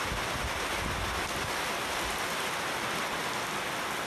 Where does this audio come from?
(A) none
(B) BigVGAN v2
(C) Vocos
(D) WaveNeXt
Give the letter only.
A